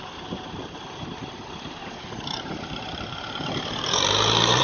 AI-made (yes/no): yes